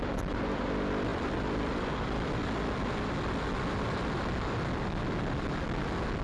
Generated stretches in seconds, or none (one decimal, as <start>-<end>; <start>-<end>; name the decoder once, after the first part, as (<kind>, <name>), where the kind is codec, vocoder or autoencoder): 0.0-2.4 (vocoder, BigVGAN v2)